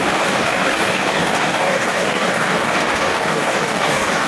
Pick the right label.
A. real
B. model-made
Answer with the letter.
B